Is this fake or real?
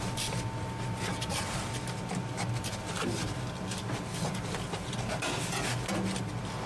real